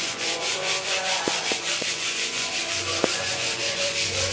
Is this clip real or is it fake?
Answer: fake